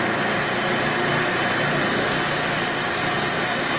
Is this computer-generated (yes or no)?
no